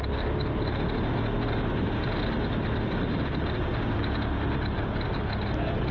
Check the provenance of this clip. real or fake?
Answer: real